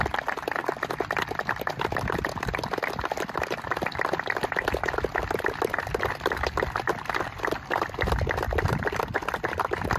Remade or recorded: recorded